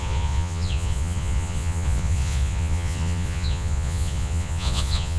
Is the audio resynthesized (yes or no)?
yes